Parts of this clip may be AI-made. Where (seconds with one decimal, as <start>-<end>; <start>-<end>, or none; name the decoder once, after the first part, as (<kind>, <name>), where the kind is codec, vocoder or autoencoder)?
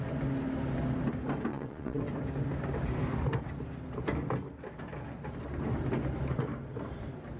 1.5-2.0 (vocoder, WaveNeXt)